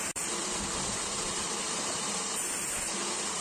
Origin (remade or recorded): remade